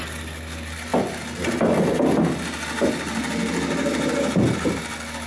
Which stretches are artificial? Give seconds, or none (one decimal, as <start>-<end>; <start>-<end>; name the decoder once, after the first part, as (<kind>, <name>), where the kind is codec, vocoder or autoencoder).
none